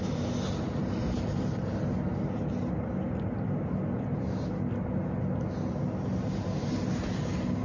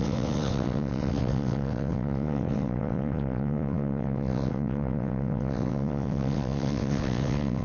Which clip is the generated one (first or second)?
second